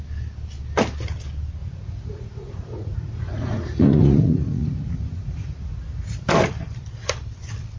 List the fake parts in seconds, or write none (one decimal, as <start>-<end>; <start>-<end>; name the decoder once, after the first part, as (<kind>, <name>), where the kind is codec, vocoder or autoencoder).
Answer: 1.6-6.3 (vocoder, Vocos)